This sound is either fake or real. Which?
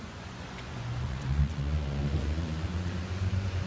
fake